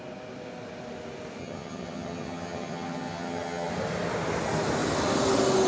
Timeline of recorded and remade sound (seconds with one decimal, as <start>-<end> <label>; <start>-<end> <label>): 0.0-1.4 recorded; 1.4-3.7 remade; 3.7-5.7 recorded

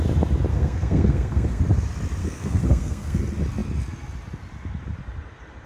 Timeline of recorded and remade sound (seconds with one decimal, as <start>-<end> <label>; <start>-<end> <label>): 0.0-0.5 recorded; 0.5-1.6 remade; 1.6-2.2 recorded; 2.2-3.2 remade; 3.2-5.7 recorded

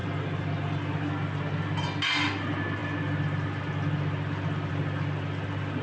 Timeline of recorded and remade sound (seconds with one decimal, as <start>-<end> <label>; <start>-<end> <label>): 0.0-5.8 recorded

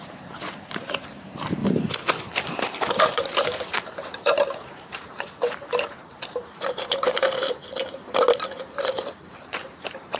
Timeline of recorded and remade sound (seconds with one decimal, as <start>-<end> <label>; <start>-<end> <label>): 0.0-1.6 remade; 1.6-2.2 recorded; 2.2-7.6 remade; 7.6-9.5 recorded; 9.5-10.2 remade

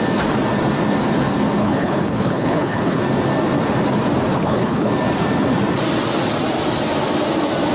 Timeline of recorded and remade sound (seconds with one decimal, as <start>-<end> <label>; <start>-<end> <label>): 0.0-1.6 recorded; 1.6-3.0 remade; 3.0-4.3 recorded; 4.3-4.9 remade; 4.9-7.7 recorded

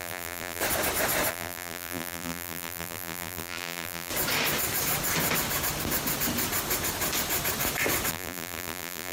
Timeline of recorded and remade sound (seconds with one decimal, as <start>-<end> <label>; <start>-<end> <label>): 0.0-0.6 remade; 0.6-1.3 recorded; 1.3-4.1 remade; 4.1-8.1 recorded; 8.1-9.1 remade

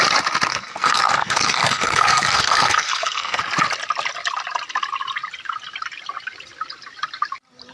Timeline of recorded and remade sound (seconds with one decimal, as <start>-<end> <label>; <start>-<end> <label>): 0.0-0.5 recorded; 0.5-3.4 remade; 3.4-7.7 recorded